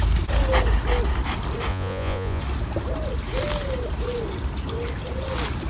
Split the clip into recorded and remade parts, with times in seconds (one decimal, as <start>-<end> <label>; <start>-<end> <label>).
0.0-1.7 recorded; 1.7-2.4 remade; 2.4-5.7 recorded